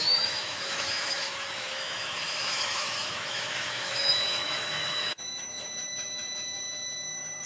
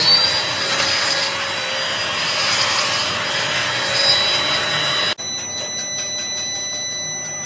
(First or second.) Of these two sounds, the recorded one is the second